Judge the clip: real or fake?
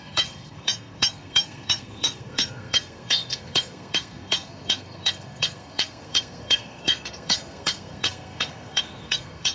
fake